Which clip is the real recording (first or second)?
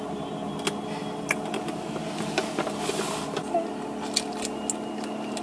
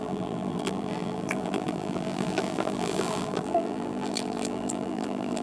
first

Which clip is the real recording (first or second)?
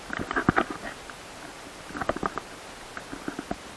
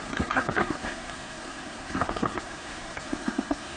first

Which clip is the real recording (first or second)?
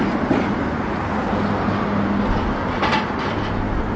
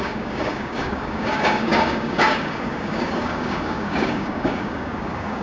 first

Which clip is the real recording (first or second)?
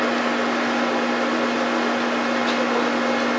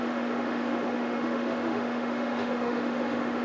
first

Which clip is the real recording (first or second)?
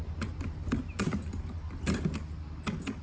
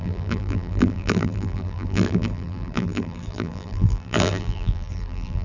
first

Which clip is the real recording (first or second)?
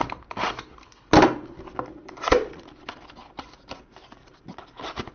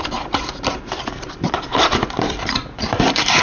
first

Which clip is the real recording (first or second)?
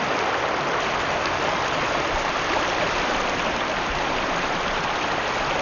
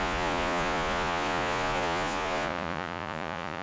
first